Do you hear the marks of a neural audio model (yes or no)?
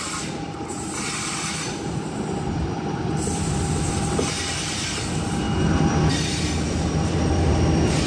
yes